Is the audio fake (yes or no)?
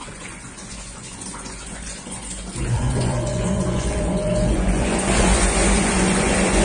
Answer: yes